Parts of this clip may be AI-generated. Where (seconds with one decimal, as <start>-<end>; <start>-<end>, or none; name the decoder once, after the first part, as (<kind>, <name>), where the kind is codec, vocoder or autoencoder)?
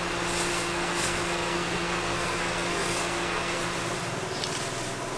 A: 0.5-3.6 (codec, SNAC)